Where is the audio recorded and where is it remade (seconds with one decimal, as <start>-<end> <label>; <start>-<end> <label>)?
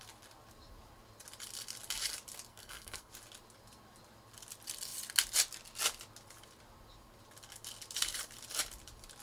0.0-2.5 recorded; 2.5-3.1 remade; 3.1-9.2 recorded